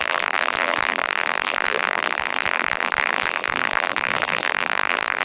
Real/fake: fake